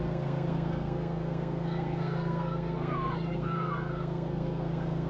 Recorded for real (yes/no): no